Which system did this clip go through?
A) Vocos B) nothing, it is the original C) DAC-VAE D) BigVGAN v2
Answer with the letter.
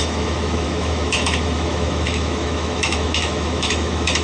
C